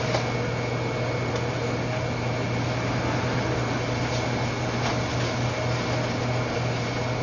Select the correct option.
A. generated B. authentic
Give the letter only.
B